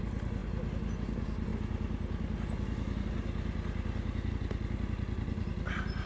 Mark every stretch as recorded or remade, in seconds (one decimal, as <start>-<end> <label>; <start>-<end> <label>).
0.0-6.1 recorded